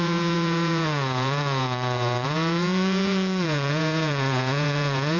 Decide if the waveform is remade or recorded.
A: remade